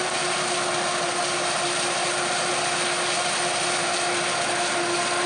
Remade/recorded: recorded